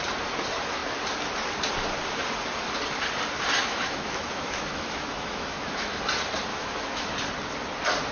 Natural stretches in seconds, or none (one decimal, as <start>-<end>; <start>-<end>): 0.0-3.6; 6.0-6.5; 7.1-8.1